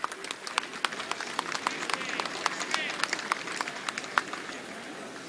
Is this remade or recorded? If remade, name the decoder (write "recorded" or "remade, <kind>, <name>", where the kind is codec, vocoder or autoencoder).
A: recorded